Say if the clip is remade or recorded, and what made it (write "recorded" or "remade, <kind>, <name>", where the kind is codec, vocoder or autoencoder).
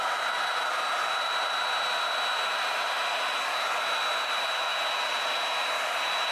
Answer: recorded